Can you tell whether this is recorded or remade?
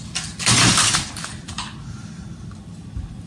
recorded